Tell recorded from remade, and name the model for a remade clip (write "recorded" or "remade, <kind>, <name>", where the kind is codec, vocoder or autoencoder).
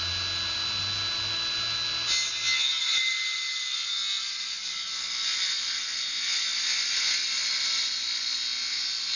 recorded